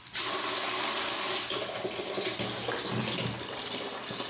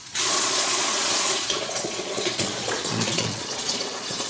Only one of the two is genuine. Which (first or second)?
first